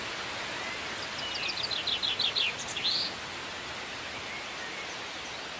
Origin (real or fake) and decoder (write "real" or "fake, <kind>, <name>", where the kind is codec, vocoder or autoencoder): real